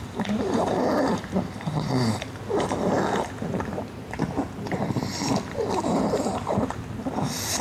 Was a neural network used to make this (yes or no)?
yes